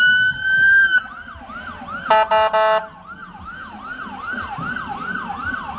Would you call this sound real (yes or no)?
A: yes